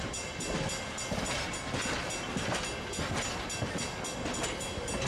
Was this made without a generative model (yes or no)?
yes